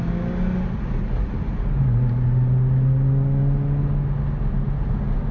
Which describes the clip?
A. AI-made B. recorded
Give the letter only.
B